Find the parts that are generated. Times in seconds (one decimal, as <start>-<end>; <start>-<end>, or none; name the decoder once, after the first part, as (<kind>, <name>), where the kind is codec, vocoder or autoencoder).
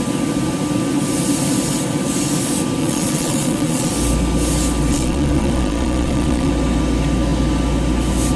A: 2.8-3.9 (vocoder, Vocos); 4.9-6.5